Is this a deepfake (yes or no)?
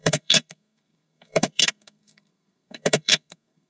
yes